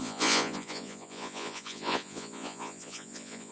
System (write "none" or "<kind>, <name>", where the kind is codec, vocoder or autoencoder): vocoder, Vocos